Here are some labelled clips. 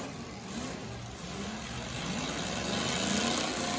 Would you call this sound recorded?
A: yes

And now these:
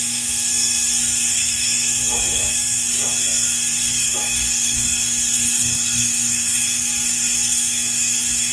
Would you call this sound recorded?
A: no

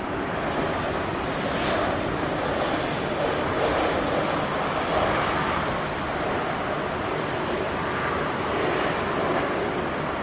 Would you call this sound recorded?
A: yes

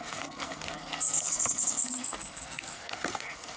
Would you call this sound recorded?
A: no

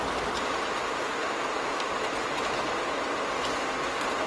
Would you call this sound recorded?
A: yes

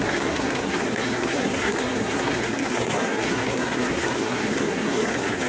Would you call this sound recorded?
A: no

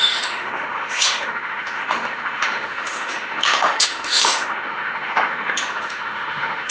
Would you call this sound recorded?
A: no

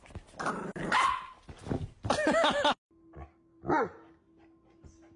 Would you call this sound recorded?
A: yes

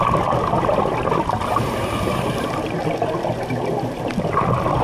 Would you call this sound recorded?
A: yes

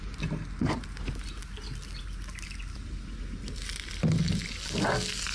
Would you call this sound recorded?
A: yes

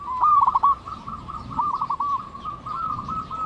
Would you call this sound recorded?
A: no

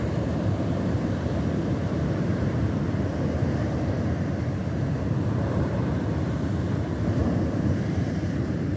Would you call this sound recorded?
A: no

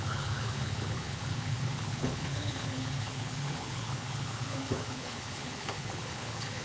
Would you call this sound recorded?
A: no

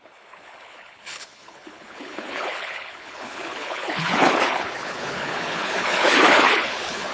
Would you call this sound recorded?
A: no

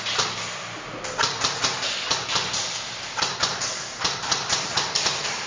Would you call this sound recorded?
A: yes